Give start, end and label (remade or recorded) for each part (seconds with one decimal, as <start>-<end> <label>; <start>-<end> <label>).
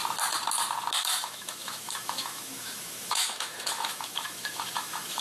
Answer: 0.0-1.0 recorded; 1.0-5.2 remade